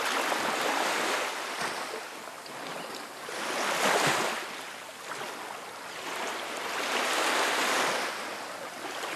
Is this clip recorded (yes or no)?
yes